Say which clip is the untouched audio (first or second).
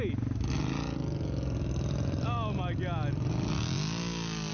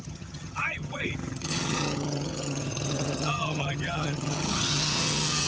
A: first